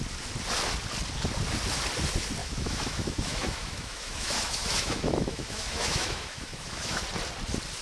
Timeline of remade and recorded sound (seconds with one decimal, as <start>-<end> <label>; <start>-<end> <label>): 0.0-2.4 recorded; 2.4-7.0 remade; 7.0-7.8 recorded